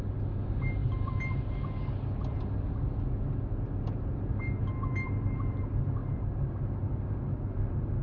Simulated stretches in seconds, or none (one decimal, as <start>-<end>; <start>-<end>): none